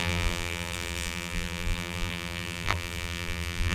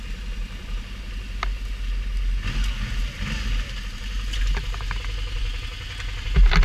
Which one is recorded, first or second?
second